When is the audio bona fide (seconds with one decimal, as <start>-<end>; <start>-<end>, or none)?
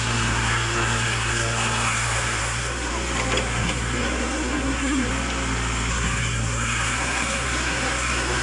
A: 2.9-3.4; 5.1-5.9